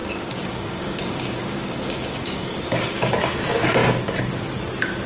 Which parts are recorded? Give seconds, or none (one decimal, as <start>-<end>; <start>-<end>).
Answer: 3.1-5.1